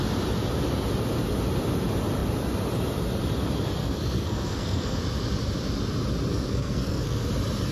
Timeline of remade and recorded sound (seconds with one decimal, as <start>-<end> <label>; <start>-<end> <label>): 0.0-3.8 recorded; 3.8-5.0 remade; 5.0-6.3 recorded; 6.3-7.3 remade; 7.3-7.7 recorded

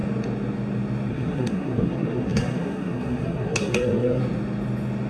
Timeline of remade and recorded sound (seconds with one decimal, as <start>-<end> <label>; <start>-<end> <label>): 0.0-1.1 recorded; 1.1-4.2 remade; 4.2-5.1 recorded

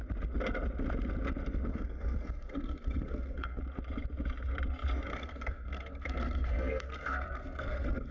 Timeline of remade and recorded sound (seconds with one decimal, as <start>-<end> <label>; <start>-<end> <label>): 0.0-1.7 recorded; 1.7-3.6 remade; 3.6-5.1 recorded; 5.1-8.1 remade

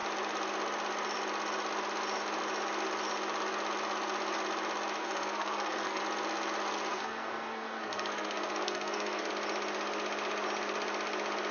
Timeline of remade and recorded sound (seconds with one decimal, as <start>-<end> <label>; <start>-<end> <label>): 0.0-5.0 recorded; 5.0-6.0 remade; 6.0-6.9 recorded; 6.9-9.3 remade; 9.3-11.5 recorded

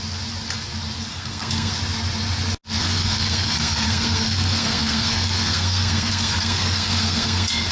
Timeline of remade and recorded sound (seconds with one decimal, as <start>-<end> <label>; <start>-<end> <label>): 0.0-1.1 recorded; 1.1-1.7 remade; 1.7-2.8 recorded; 2.8-7.7 remade

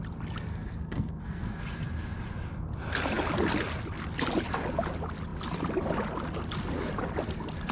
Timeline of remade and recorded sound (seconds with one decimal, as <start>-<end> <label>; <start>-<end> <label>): 0.0-0.5 recorded; 0.5-1.6 remade; 1.6-7.7 recorded

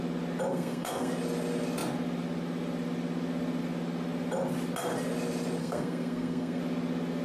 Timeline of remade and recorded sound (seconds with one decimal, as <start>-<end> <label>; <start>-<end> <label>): 0.0-0.5 recorded; 0.5-1.1 remade; 1.1-5.6 recorded; 5.6-6.6 remade; 6.6-7.2 recorded